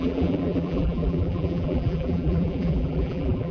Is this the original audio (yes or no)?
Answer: no